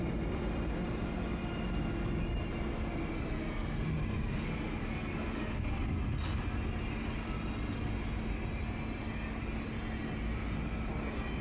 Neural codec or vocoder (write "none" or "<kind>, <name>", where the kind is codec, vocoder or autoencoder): none